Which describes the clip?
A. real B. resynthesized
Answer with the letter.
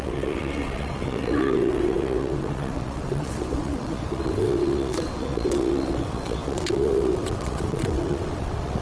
B